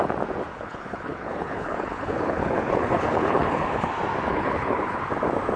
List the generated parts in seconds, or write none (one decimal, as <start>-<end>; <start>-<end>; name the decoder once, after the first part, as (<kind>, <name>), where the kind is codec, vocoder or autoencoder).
0.5-3.9 (codec, HILCodec); 4.3-5.0